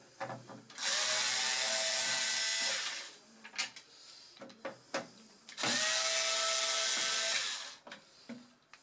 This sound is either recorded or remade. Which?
recorded